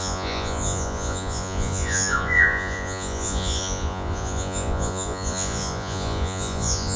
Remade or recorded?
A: remade